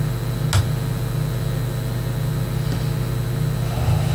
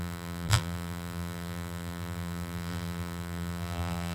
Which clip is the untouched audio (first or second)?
first